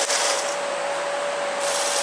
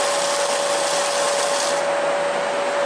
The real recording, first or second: second